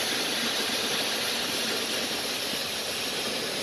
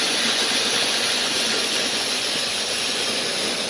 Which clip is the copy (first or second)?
second